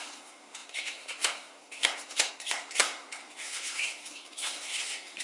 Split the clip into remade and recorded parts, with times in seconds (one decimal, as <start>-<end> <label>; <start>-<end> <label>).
0.0-5.2 remade